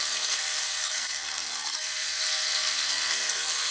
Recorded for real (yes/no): no